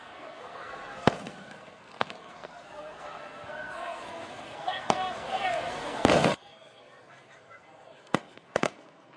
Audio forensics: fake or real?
fake